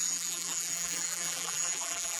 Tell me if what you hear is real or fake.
fake